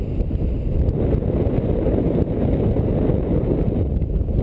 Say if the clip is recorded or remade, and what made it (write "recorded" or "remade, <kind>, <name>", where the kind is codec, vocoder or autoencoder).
recorded